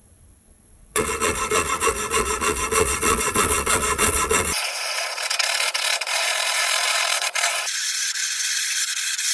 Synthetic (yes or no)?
yes